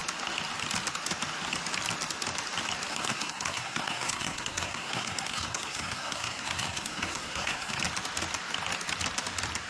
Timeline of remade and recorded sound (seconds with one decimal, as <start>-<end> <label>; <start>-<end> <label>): 0.0-2.9 recorded; 2.9-7.8 remade; 7.8-9.7 recorded